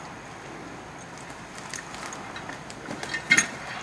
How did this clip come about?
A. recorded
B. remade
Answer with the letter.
A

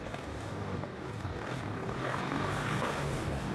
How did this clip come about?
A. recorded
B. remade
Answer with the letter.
B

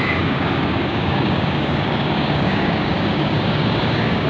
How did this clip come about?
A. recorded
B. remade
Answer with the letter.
B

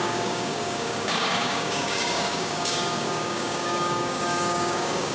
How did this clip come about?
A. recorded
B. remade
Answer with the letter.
B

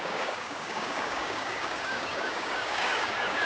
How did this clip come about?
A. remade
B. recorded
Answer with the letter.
A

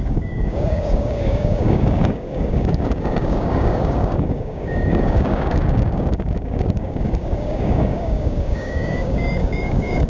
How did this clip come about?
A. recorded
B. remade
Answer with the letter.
B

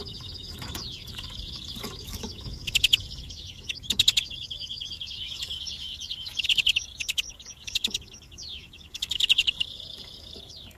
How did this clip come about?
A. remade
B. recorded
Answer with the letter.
A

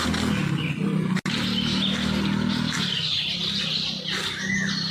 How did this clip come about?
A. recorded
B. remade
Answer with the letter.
A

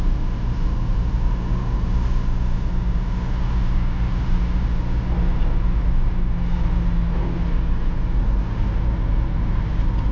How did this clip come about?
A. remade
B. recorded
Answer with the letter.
B